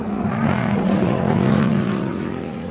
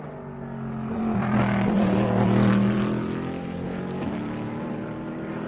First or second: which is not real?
first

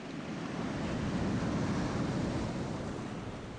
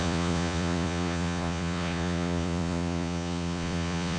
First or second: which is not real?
second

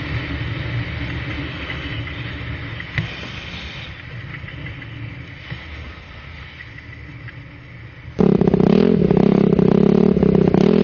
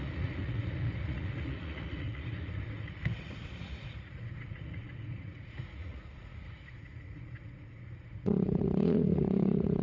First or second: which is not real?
second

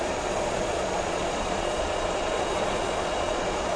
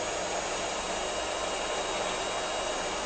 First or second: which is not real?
first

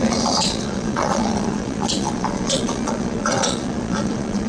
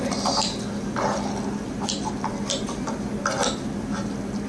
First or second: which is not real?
first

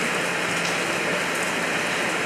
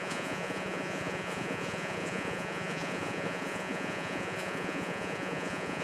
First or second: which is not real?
second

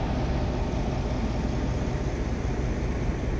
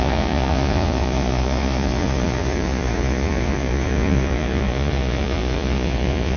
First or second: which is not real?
second